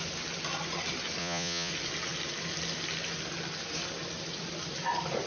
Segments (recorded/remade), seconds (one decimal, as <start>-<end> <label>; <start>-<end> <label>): 0.0-1.2 recorded; 1.2-1.7 remade; 1.7-5.3 recorded